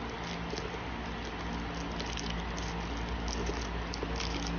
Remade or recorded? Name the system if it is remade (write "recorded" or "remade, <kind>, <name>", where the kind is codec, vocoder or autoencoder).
recorded